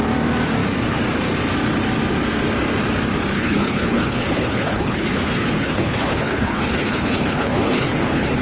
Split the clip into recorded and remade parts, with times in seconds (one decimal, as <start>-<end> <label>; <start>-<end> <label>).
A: 0.0-3.3 recorded; 3.3-8.4 remade